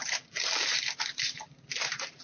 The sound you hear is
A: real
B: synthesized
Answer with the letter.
A